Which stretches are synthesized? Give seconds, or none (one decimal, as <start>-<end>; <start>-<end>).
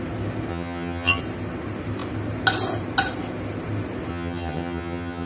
0.5-1.2; 4.1-5.3